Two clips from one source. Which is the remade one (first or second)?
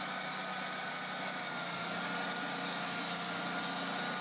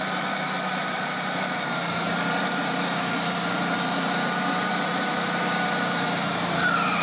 second